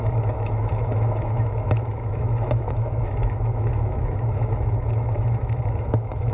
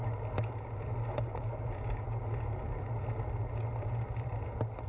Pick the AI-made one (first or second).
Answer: first